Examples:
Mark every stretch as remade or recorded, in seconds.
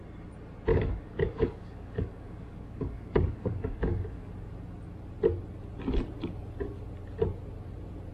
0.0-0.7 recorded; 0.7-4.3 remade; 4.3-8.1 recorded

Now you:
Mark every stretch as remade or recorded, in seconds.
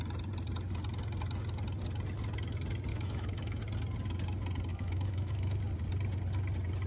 0.0-2.9 recorded; 2.9-3.6 remade; 3.6-4.7 recorded; 4.7-5.6 remade; 5.6-6.9 recorded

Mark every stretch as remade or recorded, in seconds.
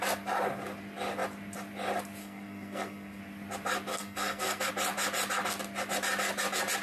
0.0-2.2 recorded; 2.2-3.2 remade; 3.2-3.9 recorded; 3.9-4.7 remade; 4.7-6.8 recorded